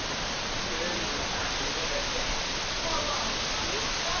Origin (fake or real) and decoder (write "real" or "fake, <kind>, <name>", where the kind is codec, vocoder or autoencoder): real